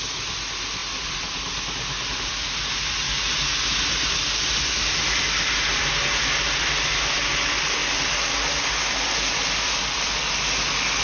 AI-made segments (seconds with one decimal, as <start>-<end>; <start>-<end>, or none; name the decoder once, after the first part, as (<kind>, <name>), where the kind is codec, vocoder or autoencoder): none